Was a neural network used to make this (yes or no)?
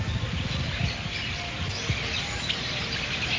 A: no